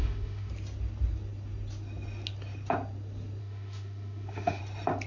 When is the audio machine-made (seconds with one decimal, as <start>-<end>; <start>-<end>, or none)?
0.0-0.5; 3.4-4.6